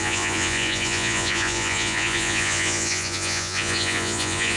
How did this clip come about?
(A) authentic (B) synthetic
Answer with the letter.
B